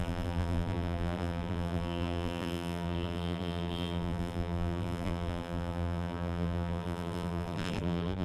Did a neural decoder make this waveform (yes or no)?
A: yes